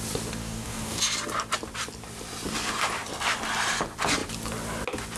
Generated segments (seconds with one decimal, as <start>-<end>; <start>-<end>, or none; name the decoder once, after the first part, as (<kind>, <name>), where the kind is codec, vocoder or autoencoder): 0.4-1.0 (codec, DAC)